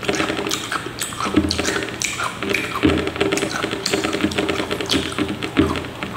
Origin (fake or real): real